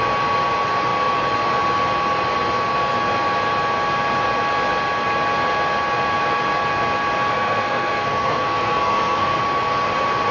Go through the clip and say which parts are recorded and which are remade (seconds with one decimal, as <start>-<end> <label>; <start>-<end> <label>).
0.0-7.3 recorded; 7.3-9.4 remade; 9.4-10.3 recorded